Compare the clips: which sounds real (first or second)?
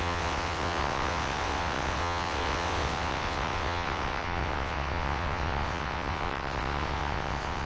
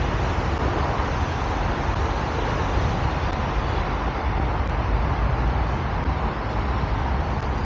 second